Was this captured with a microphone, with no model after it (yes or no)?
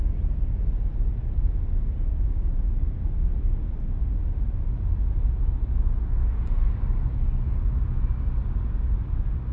yes